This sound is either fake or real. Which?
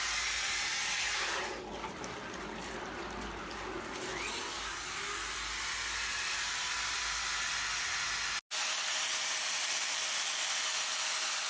real